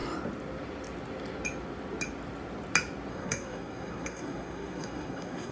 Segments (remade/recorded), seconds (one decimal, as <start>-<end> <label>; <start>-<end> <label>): 0.0-3.1 recorded; 3.1-5.5 remade